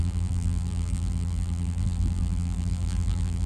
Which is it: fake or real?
fake